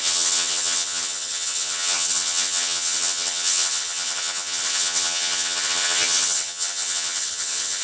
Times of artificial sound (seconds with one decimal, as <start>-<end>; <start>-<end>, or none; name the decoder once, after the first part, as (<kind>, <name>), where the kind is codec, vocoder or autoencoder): 0.0-7.8 (vocoder, HiFi-GAN)